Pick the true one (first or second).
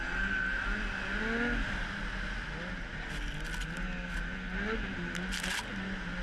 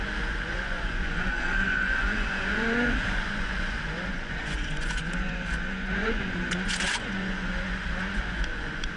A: first